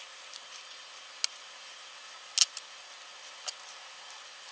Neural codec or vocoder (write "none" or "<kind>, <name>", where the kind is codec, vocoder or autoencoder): none